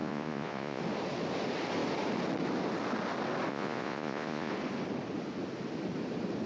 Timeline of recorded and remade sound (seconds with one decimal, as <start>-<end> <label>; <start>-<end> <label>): 0.0-0.8 remade; 0.8-3.5 recorded; 3.5-4.5 remade; 4.5-6.5 recorded